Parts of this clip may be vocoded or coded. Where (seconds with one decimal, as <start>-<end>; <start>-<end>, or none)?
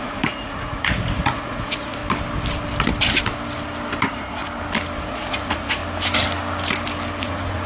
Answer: 0.0-2.0; 4.0-4.4; 5.0-5.8; 7.2-7.7